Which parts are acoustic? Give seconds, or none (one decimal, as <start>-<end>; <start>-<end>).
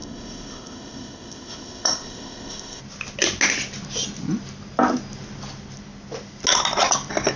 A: 2.8-7.4